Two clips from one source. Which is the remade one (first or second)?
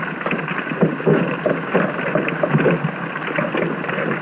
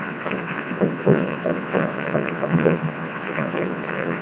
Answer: second